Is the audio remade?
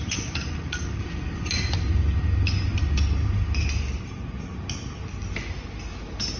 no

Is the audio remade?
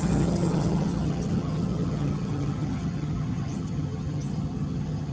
yes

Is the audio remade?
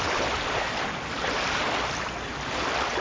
no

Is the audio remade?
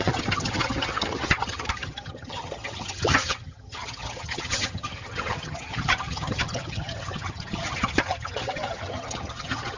yes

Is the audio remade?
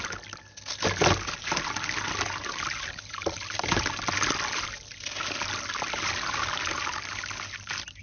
no